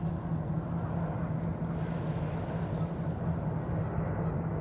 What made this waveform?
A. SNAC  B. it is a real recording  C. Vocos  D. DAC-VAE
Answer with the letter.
B